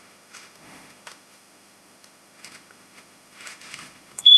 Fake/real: fake